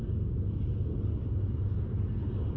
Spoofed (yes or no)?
no